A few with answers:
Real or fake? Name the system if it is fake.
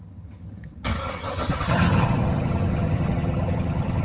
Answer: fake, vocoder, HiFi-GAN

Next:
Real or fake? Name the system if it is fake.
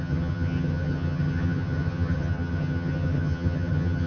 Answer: fake, vocoder, HiFi-GAN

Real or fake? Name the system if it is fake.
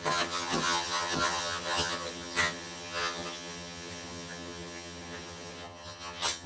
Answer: fake, vocoder, HiFi-GAN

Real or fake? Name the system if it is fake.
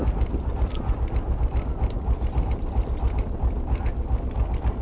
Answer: real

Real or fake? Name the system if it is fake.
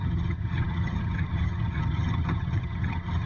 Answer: fake, vocoder, HiFi-GAN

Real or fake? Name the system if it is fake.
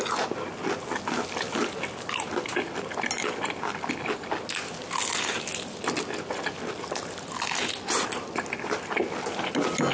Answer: real